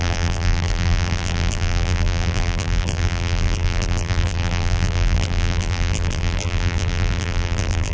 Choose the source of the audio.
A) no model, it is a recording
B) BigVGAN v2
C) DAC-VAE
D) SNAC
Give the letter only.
B